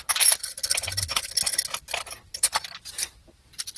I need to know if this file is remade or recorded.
recorded